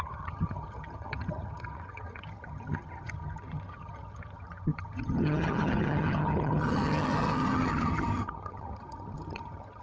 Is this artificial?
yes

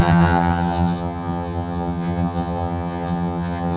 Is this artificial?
yes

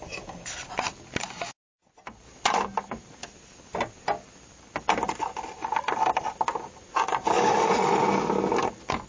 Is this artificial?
no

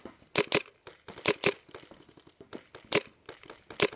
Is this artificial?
no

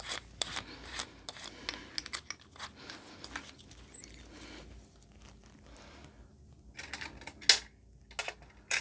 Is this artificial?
no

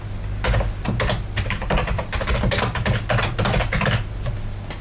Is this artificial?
no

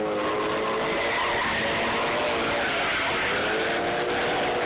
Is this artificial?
no